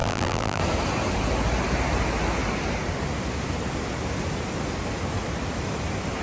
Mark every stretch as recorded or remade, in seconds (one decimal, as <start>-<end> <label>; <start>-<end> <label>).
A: 0.0-0.6 remade; 0.6-6.2 recorded